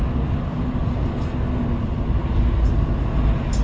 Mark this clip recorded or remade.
recorded